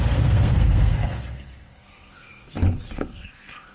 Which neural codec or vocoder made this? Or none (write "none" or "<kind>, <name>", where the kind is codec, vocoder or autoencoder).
codec, SNAC